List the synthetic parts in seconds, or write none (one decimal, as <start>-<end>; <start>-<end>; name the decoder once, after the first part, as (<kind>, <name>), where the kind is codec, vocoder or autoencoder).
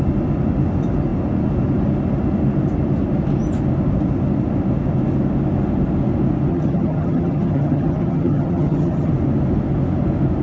6.5-9.1 (vocoder, HiFi-GAN)